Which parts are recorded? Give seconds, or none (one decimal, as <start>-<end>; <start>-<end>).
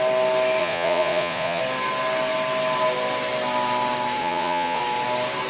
0.0-0.6; 1.6-4.2; 4.8-5.5